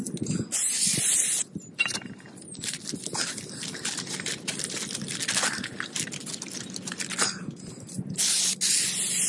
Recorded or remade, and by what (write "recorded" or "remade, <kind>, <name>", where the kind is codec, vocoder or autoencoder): recorded